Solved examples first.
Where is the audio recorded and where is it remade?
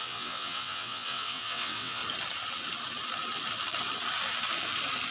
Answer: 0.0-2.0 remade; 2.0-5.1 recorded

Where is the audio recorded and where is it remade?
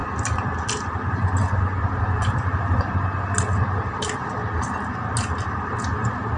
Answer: 0.0-6.4 recorded